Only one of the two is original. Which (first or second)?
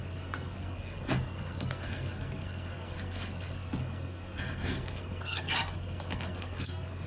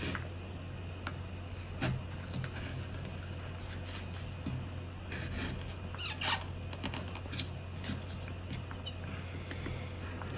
second